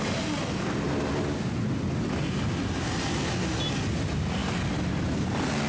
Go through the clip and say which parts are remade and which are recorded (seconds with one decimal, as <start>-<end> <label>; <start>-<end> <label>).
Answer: 0.0-5.7 recorded